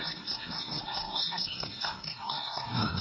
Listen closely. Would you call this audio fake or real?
fake